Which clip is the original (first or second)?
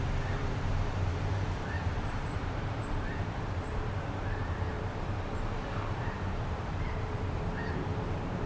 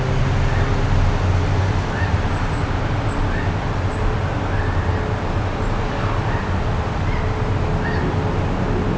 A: second